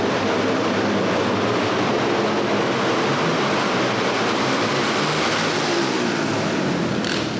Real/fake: real